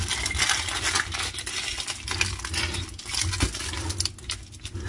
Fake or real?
real